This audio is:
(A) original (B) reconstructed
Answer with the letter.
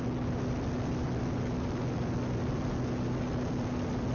A